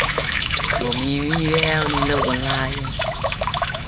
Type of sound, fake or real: fake